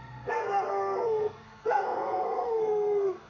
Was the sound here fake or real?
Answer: fake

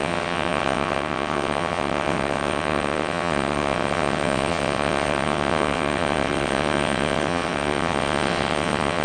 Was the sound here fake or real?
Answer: fake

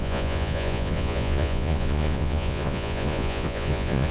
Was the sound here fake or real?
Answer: fake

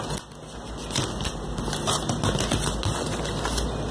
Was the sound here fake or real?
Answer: real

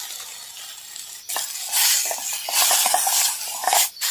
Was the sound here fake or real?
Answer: real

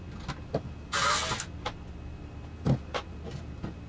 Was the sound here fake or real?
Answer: real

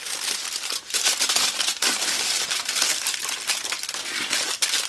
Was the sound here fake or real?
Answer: real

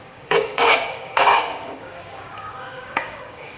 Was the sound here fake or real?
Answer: fake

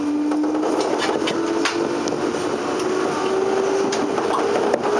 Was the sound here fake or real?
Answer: real